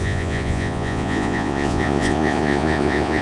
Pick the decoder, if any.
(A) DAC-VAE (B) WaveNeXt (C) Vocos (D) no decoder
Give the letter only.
C